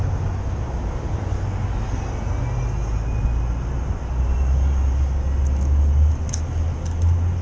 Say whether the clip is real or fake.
real